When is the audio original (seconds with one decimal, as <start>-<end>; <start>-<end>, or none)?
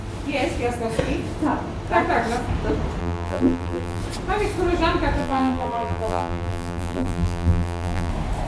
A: 0.0-3.0; 4.0-5.2; 8.1-8.5